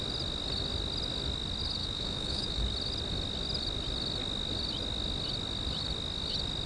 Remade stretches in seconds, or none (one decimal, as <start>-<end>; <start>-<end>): 1.8-2.6